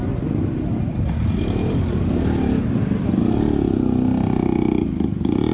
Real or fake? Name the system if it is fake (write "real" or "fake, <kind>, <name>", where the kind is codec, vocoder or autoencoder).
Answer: real